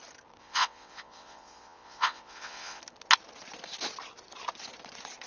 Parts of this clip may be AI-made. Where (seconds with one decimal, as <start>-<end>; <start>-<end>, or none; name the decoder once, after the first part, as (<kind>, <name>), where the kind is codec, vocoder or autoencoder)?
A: 0.4-2.8 (vocoder, WaveNeXt)